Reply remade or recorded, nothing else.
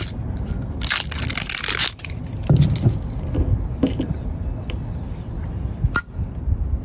recorded